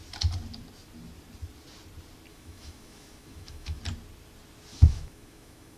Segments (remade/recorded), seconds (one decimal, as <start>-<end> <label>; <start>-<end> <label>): 0.0-2.3 recorded; 2.3-3.8 remade; 3.8-4.7 recorded; 4.7-5.8 remade